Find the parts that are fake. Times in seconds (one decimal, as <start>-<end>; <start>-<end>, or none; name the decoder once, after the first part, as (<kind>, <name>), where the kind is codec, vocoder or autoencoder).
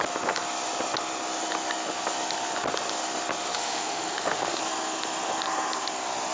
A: 3.4-4.6 (autoencoder, DAC-VAE)